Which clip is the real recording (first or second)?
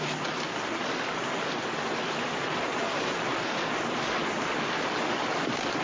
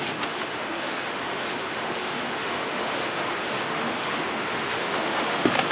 first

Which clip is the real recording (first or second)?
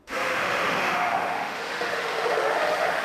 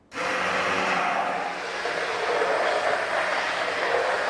second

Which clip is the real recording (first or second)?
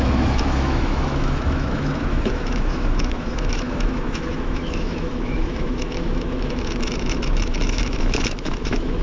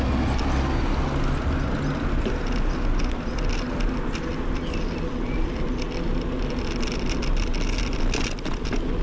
second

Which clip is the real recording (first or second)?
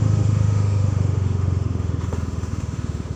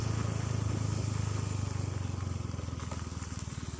second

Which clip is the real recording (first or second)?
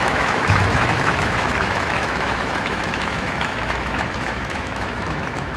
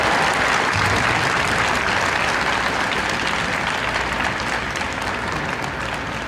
second